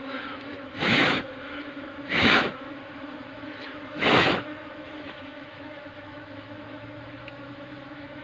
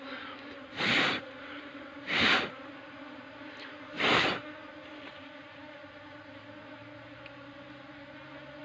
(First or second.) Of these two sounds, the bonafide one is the second